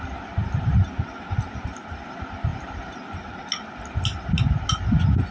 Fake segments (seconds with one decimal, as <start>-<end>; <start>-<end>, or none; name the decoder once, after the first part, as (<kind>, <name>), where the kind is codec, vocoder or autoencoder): none